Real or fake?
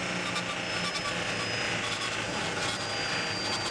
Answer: real